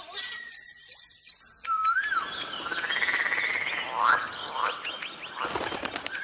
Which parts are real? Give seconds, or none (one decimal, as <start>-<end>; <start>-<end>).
0.0-6.2